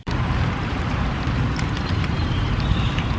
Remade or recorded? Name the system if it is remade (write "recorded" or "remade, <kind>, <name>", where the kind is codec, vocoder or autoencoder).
remade, vocoder, BigVGAN v2